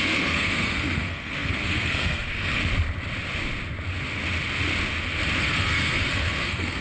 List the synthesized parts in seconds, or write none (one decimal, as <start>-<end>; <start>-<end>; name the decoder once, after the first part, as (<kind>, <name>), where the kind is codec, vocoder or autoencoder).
0.0-2.6 (codec, SNAC); 5.4-6.8

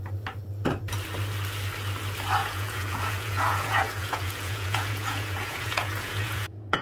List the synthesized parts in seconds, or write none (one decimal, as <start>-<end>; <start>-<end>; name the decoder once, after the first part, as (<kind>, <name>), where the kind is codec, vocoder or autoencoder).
2.4-6.8 (vocoder, Vocos)

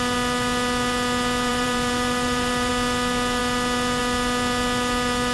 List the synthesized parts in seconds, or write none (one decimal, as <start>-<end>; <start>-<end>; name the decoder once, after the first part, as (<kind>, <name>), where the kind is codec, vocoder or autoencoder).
1.5-2.7 (vocoder, BigVGAN v2)

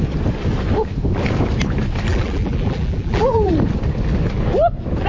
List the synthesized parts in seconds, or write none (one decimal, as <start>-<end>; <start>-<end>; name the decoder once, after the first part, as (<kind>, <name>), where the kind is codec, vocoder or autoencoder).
2.1-3.5 (vocoder, BigVGAN v2)

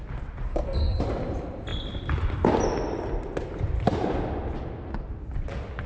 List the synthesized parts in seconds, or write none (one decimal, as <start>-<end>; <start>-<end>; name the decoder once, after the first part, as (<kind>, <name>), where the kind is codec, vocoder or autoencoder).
0.5-1.0 (codec, SNAC)

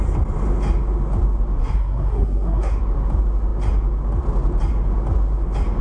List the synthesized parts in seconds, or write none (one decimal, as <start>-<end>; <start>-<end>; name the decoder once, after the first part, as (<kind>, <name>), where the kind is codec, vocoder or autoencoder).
1.6-2.8 (codec, SNAC)

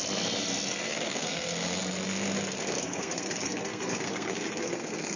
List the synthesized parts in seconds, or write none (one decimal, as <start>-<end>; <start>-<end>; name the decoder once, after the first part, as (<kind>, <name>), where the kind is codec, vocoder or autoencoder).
0.9-1.8 (codec, SNAC); 2.5-5.2